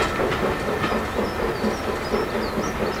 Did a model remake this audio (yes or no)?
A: no